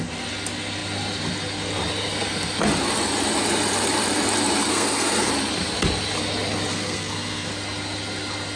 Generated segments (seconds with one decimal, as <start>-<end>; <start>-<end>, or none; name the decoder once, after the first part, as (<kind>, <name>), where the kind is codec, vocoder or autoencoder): 4.7-5.3 (codec, SNAC); 6.7-7.5